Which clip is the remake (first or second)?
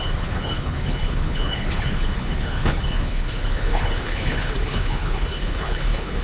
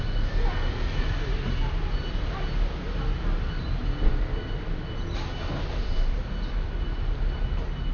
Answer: first